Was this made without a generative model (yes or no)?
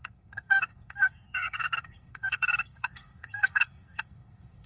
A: no